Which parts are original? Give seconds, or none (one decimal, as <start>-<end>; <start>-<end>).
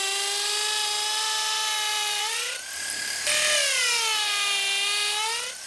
0.0-1.9; 2.6-5.7